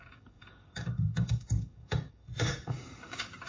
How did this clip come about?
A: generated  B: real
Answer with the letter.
A